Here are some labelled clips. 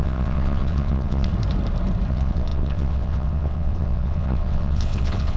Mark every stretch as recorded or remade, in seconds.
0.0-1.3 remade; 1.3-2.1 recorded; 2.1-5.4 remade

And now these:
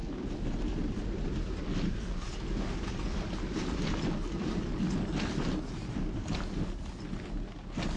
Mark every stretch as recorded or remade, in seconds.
0.0-8.0 recorded

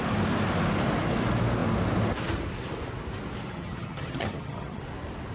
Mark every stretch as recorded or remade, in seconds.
0.0-3.5 recorded; 3.5-4.8 remade; 4.8-5.3 recorded

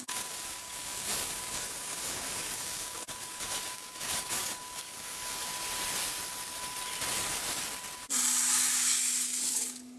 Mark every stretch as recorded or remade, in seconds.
0.0-5.5 remade; 5.5-9.5 recorded; 9.5-10.0 remade

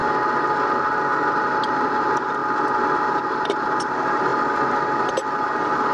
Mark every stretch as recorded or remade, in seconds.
0.0-1.3 recorded; 1.3-2.4 remade; 2.4-3.0 recorded; 3.0-4.3 remade; 4.3-5.0 recorded; 5.0-5.9 remade